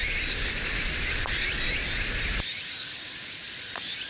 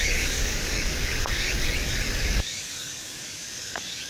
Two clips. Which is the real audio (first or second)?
first